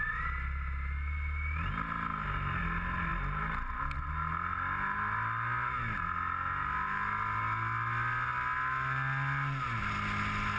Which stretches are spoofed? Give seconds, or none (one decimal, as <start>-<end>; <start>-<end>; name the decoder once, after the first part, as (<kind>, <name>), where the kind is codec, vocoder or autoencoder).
none